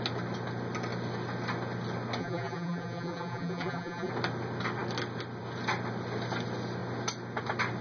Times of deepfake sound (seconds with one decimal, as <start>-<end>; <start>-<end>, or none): 2.2-4.1